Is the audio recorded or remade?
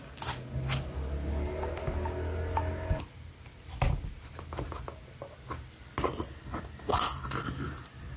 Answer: recorded